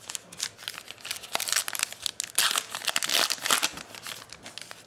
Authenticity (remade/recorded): recorded